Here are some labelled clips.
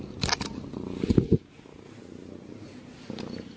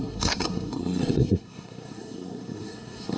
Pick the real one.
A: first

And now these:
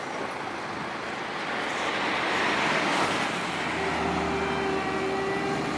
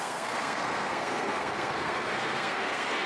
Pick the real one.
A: first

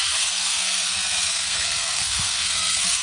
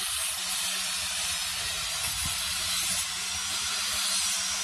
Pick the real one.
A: second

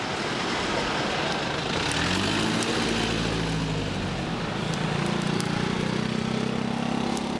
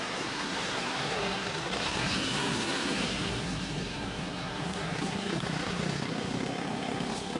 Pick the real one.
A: first